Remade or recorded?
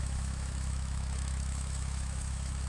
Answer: remade